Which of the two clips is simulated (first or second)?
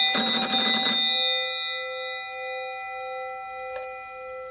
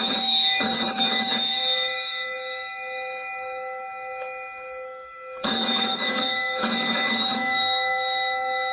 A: second